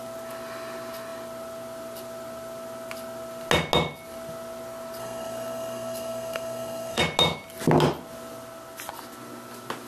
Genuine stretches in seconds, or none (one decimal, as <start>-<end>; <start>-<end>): 0.0-5.0; 7.0-9.9